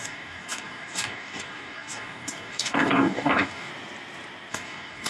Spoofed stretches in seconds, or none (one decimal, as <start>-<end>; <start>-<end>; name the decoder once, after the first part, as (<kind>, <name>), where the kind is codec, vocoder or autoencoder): 0.0-3.7 (codec, DAC); 4.5-5.1